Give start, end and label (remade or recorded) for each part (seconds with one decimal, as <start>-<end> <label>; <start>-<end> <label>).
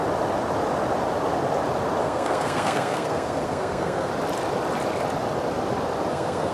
0.0-2.0 recorded; 2.0-4.1 remade; 4.1-6.1 recorded; 6.1-6.5 remade